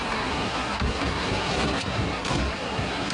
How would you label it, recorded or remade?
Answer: remade